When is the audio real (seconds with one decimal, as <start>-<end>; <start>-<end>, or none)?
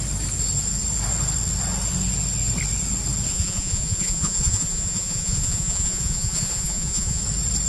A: 0.0-3.3; 7.2-7.7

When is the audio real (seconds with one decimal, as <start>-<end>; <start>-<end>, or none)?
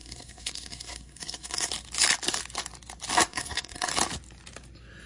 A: 1.7-3.3; 3.9-5.1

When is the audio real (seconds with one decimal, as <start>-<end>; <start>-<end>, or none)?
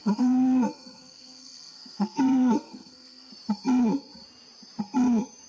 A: 3.3-5.5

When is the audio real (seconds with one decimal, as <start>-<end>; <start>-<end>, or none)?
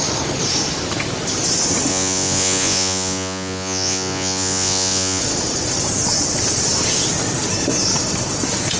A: 0.0-1.9; 5.2-8.8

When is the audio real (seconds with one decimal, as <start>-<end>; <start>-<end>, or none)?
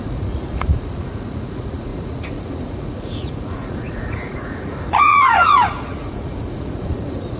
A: none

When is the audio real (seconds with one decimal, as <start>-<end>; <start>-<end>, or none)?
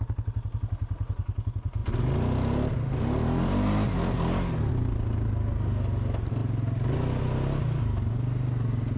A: 0.0-9.0